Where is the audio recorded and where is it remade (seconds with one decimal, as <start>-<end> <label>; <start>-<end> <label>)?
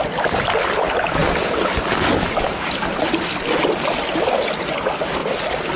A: 0.0-5.8 recorded